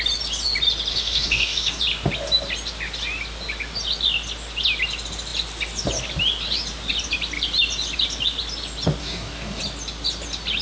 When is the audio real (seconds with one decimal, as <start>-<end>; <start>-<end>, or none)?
0.0-0.9; 1.8-9.0; 9.6-10.6